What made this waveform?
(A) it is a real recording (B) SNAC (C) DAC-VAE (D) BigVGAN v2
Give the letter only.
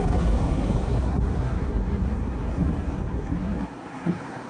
B